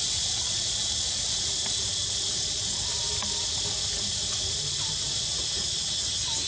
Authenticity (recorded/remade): recorded